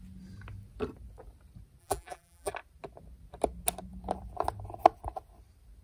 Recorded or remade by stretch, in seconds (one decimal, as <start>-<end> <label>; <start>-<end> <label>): 0.0-1.8 recorded; 1.8-2.5 remade; 2.5-5.8 recorded